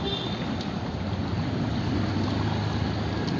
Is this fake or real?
real